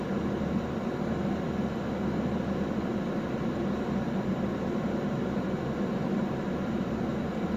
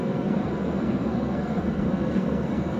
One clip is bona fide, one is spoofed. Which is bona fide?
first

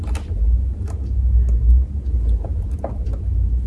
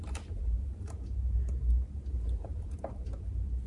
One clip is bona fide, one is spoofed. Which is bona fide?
first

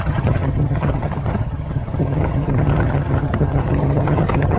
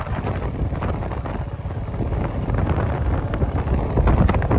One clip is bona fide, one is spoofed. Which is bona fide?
second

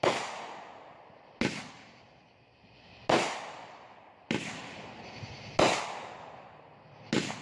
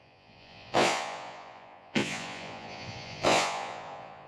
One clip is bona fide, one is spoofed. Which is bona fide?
first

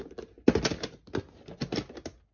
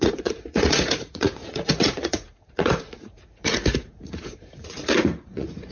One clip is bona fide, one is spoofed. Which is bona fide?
first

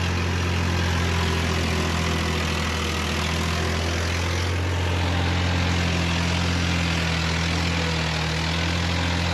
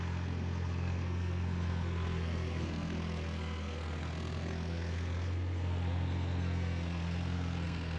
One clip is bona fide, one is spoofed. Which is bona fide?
first